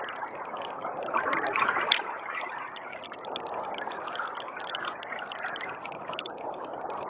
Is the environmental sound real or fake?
real